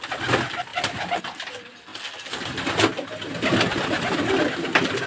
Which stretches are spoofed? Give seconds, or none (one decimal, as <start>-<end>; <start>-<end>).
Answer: 0.7-1.2